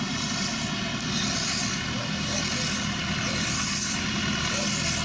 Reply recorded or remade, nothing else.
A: recorded